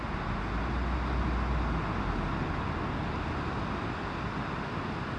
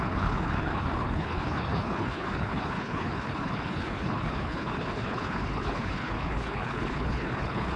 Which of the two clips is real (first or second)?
first